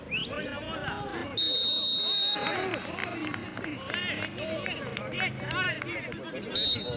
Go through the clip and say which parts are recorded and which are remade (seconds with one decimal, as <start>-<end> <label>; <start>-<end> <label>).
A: 0.0-7.0 recorded